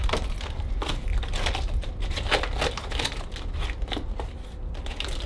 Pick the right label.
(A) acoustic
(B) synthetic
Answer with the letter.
A